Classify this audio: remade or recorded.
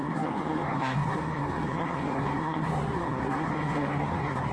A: remade